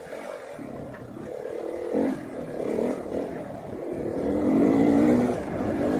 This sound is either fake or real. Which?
fake